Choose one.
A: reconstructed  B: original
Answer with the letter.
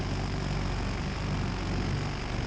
B